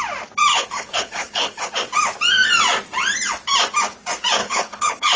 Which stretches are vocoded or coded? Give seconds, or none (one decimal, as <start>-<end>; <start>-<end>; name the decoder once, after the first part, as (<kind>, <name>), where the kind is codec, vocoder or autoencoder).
0.5-1.7 (codec, HILCodec); 4.4-5.2